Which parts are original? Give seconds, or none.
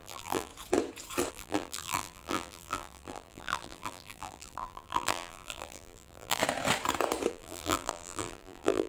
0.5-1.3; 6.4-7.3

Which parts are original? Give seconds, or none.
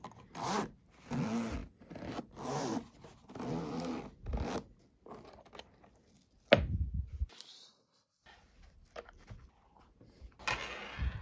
0.0-11.2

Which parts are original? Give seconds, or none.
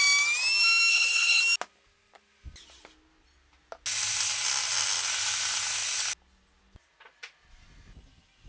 0.0-0.9; 1.4-8.5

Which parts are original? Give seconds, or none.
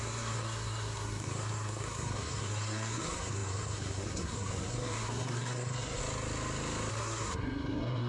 6.0-6.9